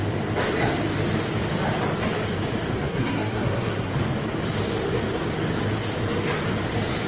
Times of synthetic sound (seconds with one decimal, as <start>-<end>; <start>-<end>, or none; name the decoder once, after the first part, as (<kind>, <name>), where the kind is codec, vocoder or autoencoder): 2.8-3.9 (codec, SNAC)